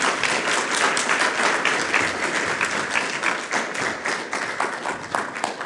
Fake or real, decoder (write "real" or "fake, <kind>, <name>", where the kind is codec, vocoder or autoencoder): real